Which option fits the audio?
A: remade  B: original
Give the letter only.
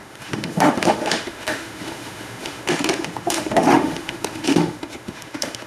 A